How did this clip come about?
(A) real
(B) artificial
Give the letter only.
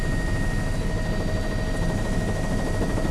A